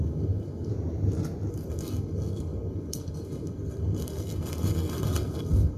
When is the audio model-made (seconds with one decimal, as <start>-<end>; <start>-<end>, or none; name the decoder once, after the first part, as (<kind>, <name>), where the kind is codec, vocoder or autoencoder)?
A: 0.0-0.7 (codec, SNAC); 1.5-5.8